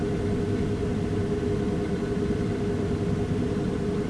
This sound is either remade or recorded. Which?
recorded